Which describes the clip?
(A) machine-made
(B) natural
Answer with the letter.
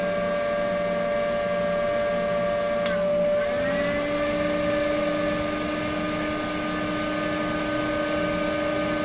B